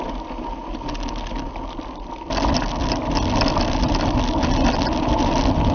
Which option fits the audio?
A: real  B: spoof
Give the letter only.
A